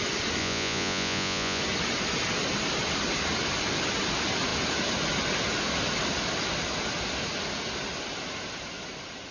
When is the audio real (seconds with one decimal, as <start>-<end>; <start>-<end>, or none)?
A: 0.0-0.4; 1.6-9.3